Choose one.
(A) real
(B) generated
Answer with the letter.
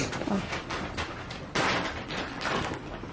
A